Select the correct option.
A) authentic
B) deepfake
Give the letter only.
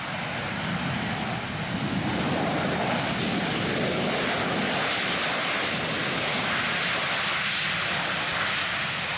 A